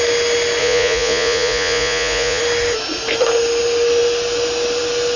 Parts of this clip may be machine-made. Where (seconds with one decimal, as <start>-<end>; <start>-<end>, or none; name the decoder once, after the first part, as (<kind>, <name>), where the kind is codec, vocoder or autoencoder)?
0.6-2.4 (vocoder, Vocos)